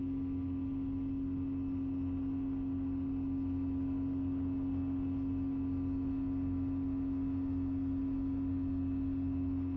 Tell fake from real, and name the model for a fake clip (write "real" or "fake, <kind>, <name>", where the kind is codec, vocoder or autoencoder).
real